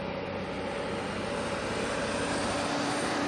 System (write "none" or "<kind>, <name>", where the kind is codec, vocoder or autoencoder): none